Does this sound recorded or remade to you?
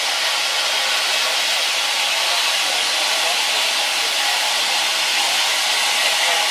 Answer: recorded